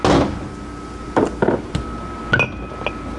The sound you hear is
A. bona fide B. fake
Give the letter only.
A